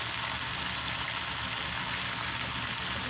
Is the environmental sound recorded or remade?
recorded